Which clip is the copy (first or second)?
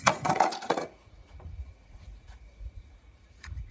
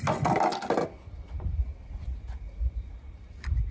first